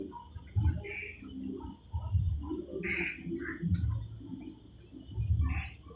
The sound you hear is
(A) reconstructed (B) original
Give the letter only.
B